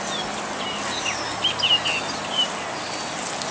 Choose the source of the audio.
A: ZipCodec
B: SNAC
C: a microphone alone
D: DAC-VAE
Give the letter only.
C